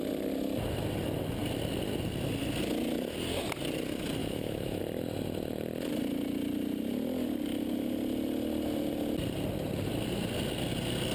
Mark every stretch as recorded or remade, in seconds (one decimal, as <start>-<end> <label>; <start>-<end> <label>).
0.0-4.2 recorded; 4.2-4.8 remade; 4.8-11.1 recorded